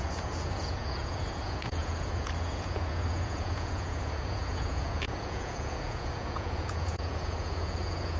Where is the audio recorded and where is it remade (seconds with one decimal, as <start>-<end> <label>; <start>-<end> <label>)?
0.0-8.2 remade